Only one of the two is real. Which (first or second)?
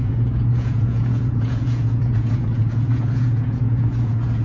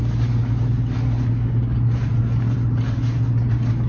second